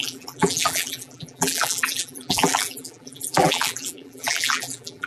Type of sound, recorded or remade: remade